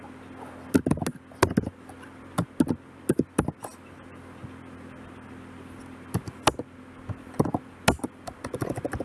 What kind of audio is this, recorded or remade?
recorded